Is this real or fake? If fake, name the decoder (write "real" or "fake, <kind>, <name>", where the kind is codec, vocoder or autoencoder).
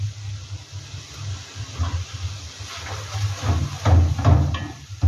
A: real